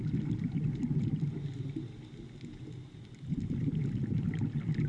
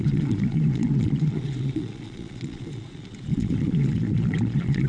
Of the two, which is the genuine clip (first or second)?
first